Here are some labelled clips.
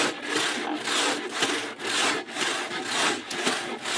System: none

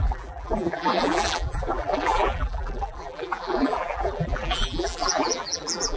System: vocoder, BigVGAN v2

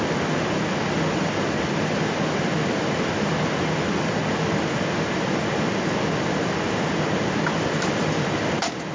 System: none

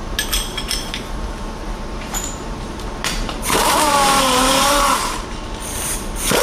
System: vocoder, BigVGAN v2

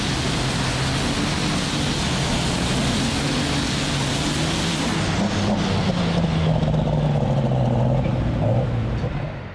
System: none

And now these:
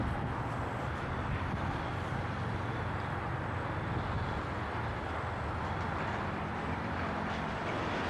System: none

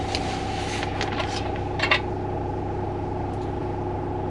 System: none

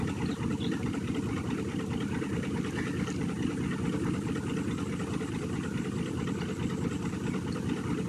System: none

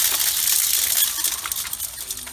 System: none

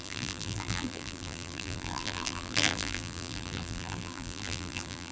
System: vocoder, BigVGAN v2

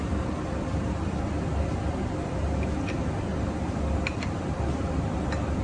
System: vocoder, BigVGAN v2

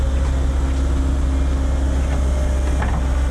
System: none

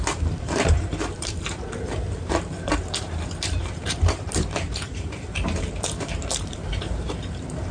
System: vocoder, BigVGAN v2